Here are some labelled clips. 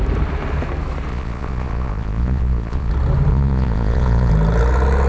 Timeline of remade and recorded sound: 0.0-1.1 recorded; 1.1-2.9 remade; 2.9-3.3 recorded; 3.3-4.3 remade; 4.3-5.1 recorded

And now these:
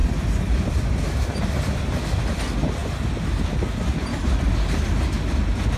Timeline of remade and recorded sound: 0.0-5.8 recorded

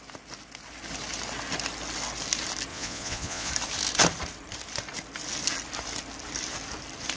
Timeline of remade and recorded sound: 0.0-2.7 recorded; 2.7-3.5 remade; 3.5-7.2 recorded

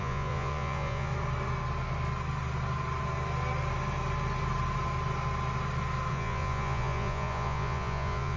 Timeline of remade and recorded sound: 0.0-1.1 remade; 1.1-6.1 recorded; 6.1-8.4 remade

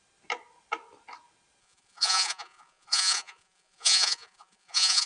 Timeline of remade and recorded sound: 0.0-1.6 recorded; 1.6-5.1 remade

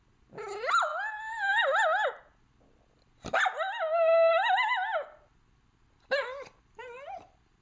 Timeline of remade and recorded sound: 0.0-7.6 recorded

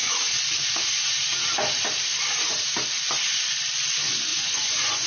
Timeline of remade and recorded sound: 0.0-4.3 recorded; 4.3-5.1 remade

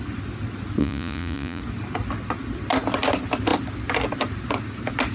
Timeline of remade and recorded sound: 0.0-0.8 recorded; 0.8-1.6 remade; 1.6-5.1 recorded